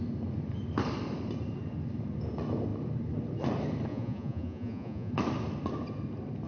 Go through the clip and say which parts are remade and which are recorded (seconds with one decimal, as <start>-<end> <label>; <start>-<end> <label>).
0.0-3.9 recorded; 3.9-5.1 remade; 5.1-6.5 recorded